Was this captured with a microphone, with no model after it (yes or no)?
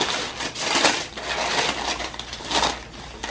yes